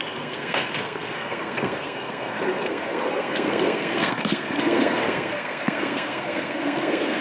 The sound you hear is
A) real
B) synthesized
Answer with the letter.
B